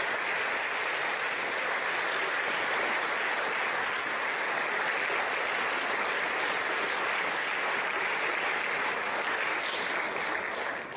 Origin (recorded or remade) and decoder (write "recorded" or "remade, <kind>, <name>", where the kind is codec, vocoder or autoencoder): recorded